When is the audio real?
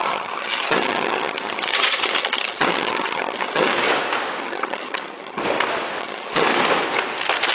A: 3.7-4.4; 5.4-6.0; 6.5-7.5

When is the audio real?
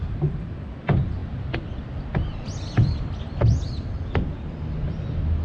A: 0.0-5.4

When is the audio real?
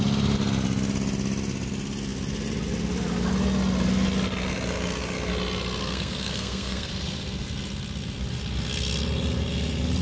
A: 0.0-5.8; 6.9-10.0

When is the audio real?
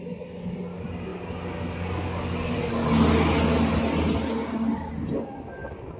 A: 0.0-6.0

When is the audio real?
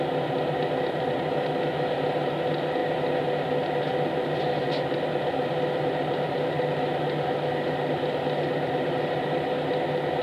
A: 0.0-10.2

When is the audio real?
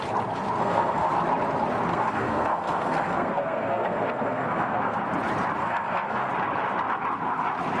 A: 0.0-0.6; 1.1-1.9; 5.0-5.6; 6.3-7.8